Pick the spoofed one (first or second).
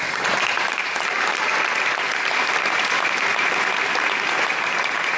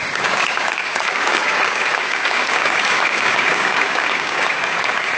second